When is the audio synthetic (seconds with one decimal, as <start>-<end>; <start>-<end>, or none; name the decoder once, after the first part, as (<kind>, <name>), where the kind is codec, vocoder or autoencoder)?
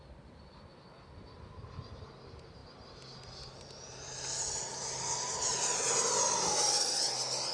none